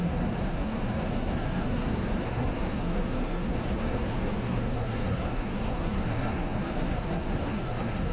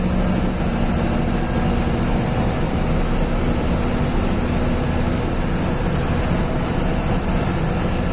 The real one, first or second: second